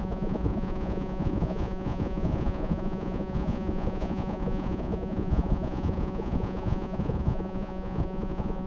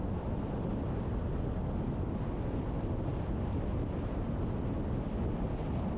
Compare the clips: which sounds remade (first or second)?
first